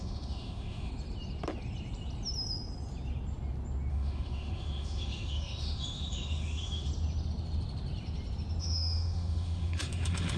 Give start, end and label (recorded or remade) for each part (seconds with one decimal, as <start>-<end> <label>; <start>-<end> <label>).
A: 0.0-0.9 remade; 0.9-3.9 recorded; 3.9-6.9 remade; 6.9-8.6 recorded; 8.6-10.4 remade